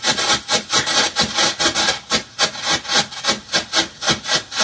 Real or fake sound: real